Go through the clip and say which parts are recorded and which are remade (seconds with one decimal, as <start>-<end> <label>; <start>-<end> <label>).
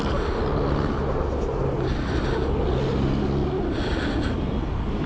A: 0.0-5.1 recorded